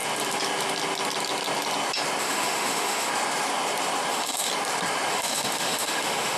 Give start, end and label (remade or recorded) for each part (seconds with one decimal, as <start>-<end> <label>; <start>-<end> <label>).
0.0-2.2 recorded; 2.2-3.1 remade; 3.1-4.1 recorded; 4.1-4.5 remade; 4.5-5.1 recorded; 5.1-6.4 remade